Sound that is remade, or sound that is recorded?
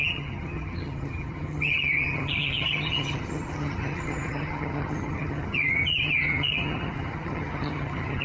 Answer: remade